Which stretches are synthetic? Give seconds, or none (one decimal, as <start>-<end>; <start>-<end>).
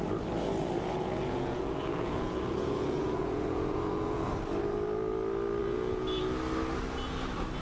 0.6-4.3; 5.6-6.2